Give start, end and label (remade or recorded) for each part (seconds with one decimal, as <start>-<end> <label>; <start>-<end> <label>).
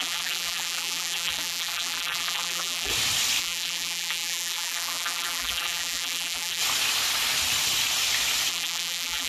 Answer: 0.0-2.9 remade; 2.9-3.4 recorded; 3.4-6.6 remade; 6.6-8.5 recorded; 8.5-9.3 remade